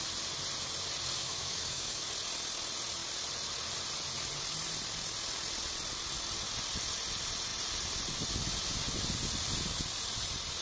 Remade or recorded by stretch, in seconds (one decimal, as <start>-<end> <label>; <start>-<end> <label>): 0.0-1.2 recorded; 1.2-2.1 remade; 2.1-10.6 recorded